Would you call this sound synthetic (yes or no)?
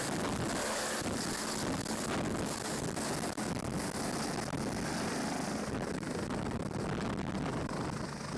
no